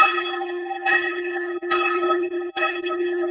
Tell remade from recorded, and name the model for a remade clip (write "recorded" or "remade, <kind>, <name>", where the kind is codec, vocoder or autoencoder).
remade, codec, HILCodec